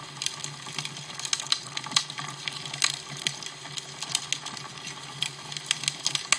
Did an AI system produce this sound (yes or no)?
no